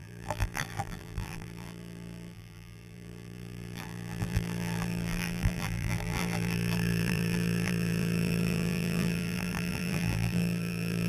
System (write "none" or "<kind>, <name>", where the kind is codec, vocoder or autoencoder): vocoder, BigVGAN v2